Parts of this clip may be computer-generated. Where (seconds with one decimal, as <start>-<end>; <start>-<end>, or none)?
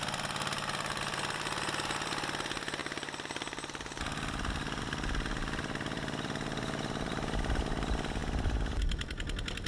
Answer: 0.0-9.7